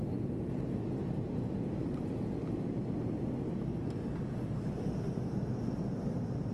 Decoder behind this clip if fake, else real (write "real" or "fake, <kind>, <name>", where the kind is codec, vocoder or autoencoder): real